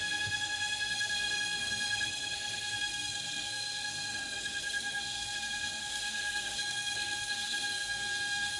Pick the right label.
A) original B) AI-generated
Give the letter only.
B